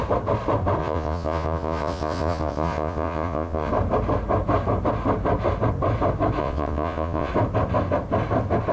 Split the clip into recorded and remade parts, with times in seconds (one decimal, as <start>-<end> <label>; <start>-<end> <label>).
0.0-0.8 recorded; 0.8-3.7 remade; 3.7-6.4 recorded; 6.4-7.3 remade; 7.3-8.7 recorded